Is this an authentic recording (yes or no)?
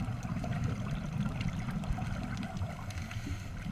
yes